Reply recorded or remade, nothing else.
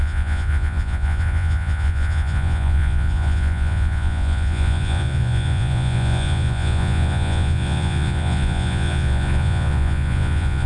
remade